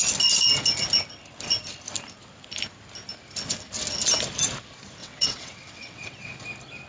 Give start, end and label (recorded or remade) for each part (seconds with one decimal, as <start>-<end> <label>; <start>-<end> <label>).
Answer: 0.0-5.0 recorded; 5.0-6.4 remade; 6.4-6.9 recorded